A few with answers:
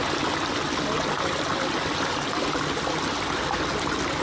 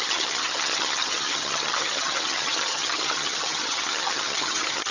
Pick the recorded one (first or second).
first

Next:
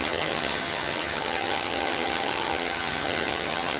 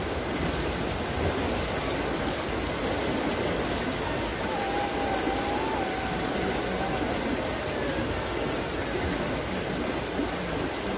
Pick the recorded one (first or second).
second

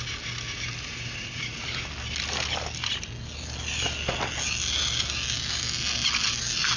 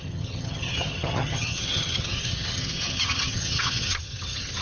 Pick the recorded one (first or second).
first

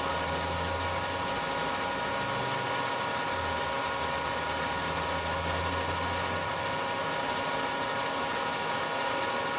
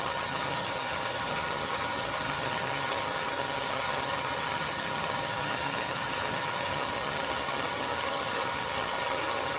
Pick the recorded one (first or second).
first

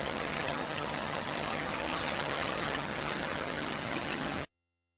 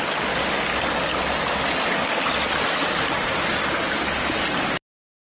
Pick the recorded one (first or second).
second